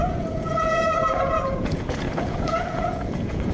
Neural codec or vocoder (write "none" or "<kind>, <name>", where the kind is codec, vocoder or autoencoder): vocoder, Vocos